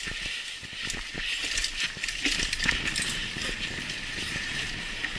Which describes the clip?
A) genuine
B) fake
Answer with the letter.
A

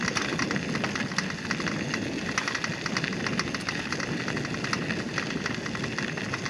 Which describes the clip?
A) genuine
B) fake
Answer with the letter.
A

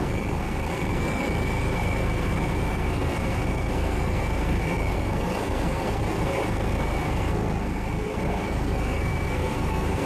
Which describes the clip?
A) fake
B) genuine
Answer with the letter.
A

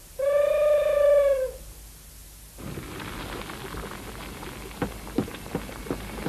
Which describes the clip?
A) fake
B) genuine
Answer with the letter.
B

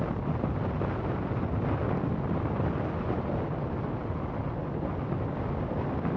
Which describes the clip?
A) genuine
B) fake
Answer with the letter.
A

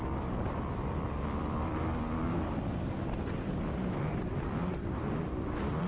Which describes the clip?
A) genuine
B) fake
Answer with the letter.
B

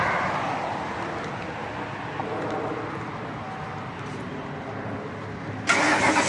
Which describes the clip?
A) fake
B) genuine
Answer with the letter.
B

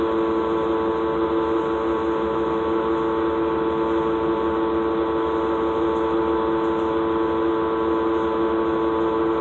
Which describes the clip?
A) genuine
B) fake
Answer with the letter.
A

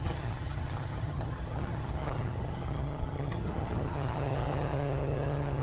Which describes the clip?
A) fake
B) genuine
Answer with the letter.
A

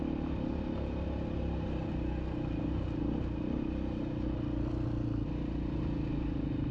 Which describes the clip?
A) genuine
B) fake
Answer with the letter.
A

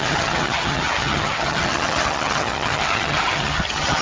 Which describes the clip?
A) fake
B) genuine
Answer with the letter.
A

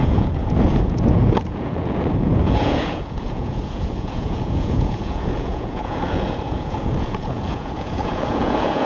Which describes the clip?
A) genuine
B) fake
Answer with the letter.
B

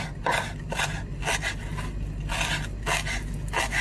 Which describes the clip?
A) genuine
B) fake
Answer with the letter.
A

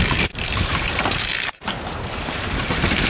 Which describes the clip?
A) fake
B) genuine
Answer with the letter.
A